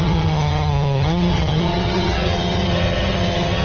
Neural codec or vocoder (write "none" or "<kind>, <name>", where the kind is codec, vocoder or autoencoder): vocoder, HiFi-GAN